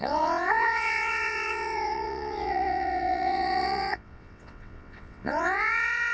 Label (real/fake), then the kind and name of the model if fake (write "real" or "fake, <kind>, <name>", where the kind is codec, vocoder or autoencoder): fake, vocoder, WaveNeXt